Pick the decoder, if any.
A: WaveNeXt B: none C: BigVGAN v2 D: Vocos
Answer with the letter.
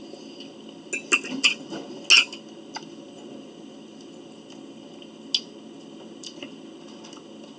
B